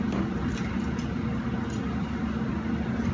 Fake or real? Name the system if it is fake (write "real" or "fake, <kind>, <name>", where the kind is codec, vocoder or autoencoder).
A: real